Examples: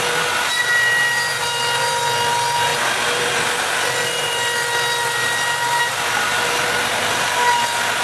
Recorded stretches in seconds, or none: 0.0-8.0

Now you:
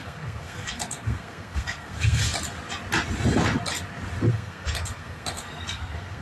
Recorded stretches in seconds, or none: 2.2-4.3

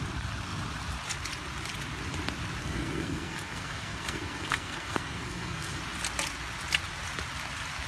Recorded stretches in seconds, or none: 0.0-2.6; 5.8-7.9

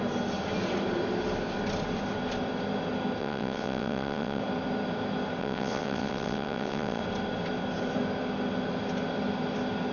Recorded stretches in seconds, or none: 0.0-3.2; 4.4-5.4; 7.0-9.9

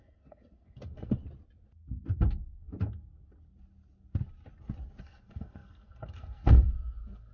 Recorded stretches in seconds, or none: 1.2-5.0

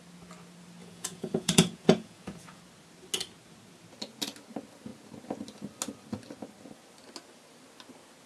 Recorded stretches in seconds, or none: 0.0-0.8; 2.6-8.3

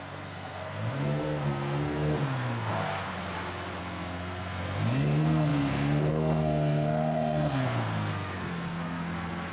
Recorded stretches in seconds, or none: 2.7-3.8